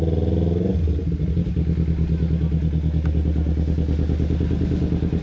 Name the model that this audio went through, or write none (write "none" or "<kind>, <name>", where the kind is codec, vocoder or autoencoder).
none